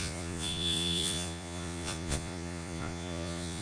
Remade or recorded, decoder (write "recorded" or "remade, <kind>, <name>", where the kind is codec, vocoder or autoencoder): remade, vocoder, Vocos